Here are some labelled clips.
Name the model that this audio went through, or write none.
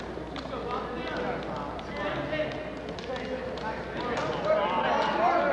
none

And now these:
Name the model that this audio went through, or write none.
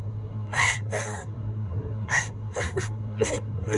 codec, SNAC